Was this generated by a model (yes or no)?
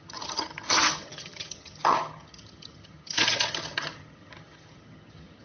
yes